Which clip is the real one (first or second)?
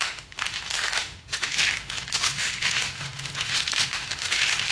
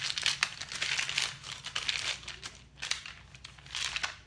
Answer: second